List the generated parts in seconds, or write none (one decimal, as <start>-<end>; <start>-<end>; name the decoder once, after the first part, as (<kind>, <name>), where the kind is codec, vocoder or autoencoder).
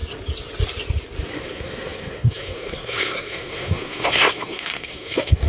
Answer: 1.3-5.5 (codec, SNAC)